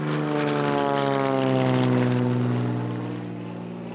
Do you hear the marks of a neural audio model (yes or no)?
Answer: no